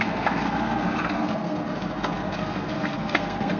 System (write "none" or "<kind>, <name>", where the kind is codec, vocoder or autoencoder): codec, SNAC